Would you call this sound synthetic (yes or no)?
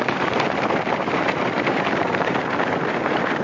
yes